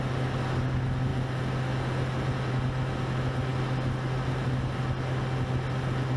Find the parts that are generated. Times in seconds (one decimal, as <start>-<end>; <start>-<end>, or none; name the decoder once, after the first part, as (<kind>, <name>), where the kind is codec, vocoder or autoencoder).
none